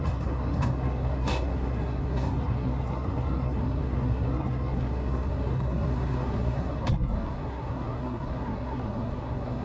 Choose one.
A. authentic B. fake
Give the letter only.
B